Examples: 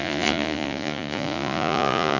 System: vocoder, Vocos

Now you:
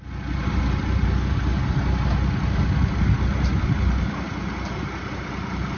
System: none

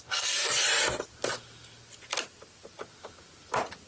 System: none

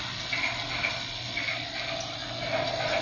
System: none